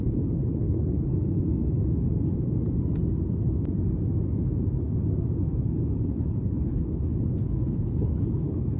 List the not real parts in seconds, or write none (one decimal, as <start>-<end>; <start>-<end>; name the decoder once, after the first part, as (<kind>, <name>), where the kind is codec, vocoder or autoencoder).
0.0-1.1 (codec, HILCodec); 5.6-8.8